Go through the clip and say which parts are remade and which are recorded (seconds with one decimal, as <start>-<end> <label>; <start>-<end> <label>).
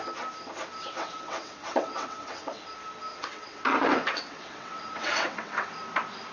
0.0-0.8 recorded; 0.8-2.7 remade; 2.7-3.1 recorded; 3.1-5.7 remade; 5.7-6.3 recorded